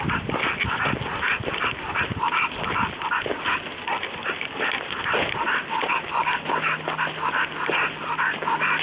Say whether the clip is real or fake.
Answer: real